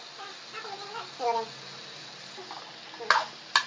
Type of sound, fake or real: real